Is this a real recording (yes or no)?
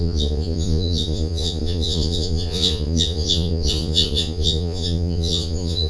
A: no